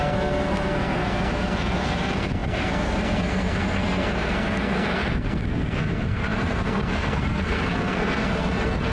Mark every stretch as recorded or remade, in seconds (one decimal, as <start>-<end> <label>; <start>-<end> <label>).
0.0-8.9 remade